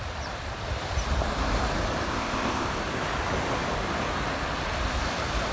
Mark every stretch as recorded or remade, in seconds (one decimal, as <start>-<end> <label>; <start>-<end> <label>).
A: 0.0-2.1 recorded; 2.1-2.8 remade; 2.8-5.5 recorded